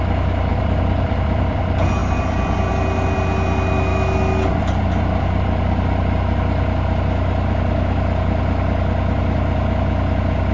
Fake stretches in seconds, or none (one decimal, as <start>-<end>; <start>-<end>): 0.5-1.6